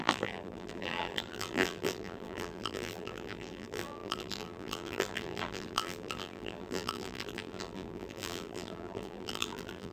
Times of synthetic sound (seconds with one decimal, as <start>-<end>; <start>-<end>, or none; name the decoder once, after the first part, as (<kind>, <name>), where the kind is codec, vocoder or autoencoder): 0.0-9.9 (vocoder, BigVGAN v2)